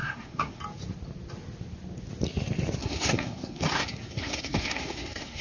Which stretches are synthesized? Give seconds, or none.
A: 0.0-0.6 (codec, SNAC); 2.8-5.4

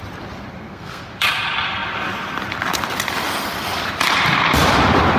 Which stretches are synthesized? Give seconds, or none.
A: 0.5-1.0 (codec, SNAC)

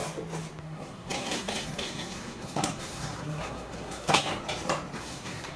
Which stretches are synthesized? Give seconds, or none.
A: 0.6-4.4 (codec, SNAC); 5.0-5.6

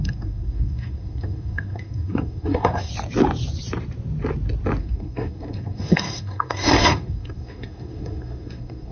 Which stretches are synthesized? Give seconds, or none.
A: 0.0-2.9 (codec, SNAC); 4.8-8.9